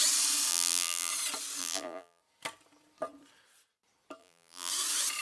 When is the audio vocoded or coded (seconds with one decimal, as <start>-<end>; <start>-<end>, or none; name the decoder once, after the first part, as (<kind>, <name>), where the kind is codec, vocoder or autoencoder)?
0.5-1.1 (vocoder, BigVGAN v2); 1.6-2.2; 4.2-4.7